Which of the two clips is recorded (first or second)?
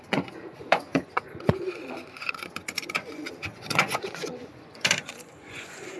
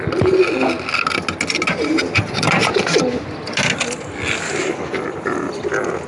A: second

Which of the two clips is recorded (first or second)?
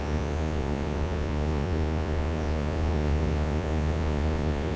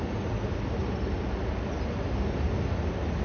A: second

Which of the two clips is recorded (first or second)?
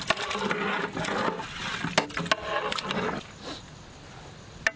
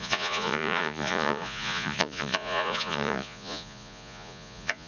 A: first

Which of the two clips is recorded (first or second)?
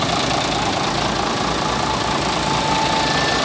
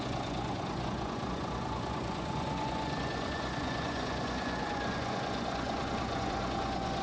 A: first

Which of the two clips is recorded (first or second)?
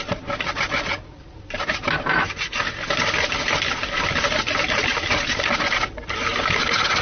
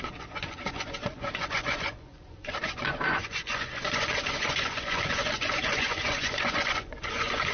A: first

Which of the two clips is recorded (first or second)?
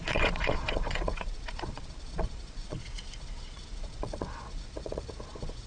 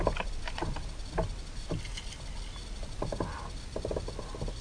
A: second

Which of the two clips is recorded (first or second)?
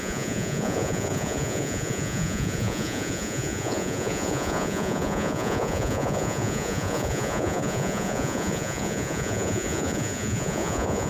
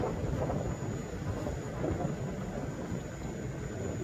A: second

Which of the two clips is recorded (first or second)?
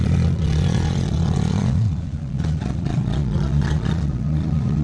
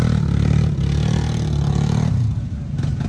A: second